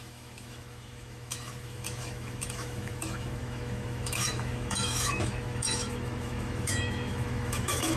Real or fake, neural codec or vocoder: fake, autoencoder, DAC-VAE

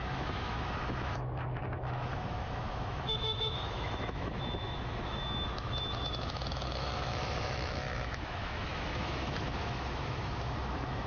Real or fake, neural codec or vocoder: fake, autoencoder, DAC-VAE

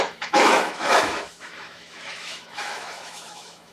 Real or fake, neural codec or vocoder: fake, autoencoder, DAC-VAE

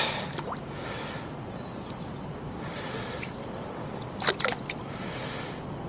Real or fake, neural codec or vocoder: real